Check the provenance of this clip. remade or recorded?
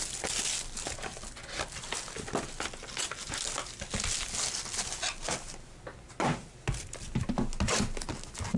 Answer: recorded